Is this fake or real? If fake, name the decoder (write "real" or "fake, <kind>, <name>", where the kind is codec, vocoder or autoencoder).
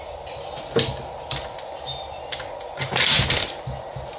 real